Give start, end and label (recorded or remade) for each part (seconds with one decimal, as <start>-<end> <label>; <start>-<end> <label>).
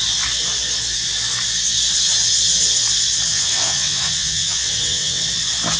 0.0-3.3 recorded; 3.3-5.2 remade; 5.2-5.8 recorded